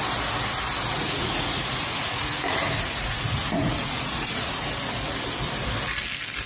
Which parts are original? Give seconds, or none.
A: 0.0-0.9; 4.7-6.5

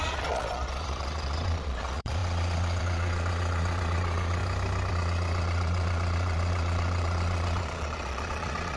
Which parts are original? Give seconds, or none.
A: 4.4-4.9

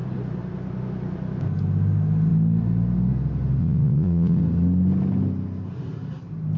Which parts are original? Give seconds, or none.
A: 0.0-3.6; 4.4-6.6

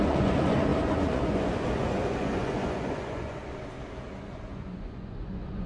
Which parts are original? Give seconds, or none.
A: 3.4-4.2

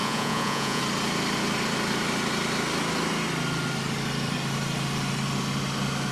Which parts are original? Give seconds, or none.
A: 0.8-6.1

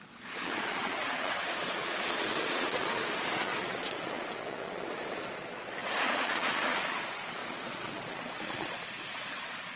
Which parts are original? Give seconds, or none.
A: none

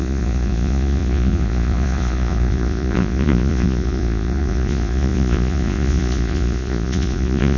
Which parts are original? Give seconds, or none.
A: none

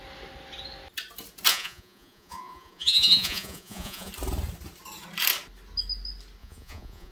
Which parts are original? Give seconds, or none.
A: 0.0-1.5; 4.1-6.4